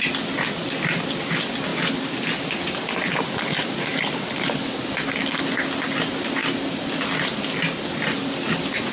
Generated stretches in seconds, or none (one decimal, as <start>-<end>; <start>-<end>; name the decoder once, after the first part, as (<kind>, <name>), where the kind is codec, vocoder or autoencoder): none